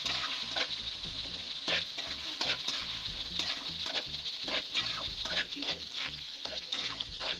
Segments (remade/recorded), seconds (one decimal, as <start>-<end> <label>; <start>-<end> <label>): 0.0-5.4 recorded; 5.4-7.4 remade